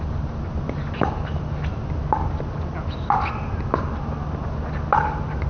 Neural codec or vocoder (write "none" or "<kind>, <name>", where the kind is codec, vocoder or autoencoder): none